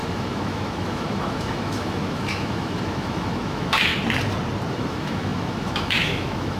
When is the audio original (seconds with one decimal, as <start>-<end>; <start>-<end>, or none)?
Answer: 3.9-4.7